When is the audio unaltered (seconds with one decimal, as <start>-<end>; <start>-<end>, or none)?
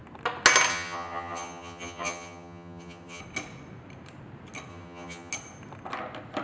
0.0-0.7; 3.2-4.7; 5.3-6.4